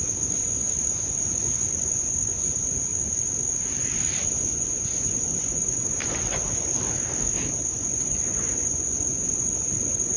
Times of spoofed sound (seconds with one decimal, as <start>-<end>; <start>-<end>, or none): 0.0-2.9; 4.3-6.7; 7.7-10.2